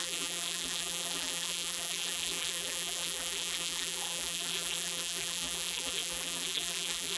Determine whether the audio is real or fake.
fake